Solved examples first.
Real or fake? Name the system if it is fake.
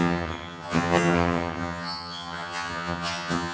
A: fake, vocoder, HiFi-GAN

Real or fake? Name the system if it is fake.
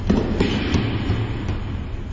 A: real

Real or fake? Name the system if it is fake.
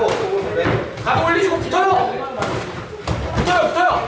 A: real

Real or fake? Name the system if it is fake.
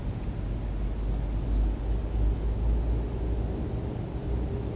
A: real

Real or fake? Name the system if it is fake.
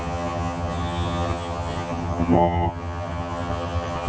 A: fake, vocoder, HiFi-GAN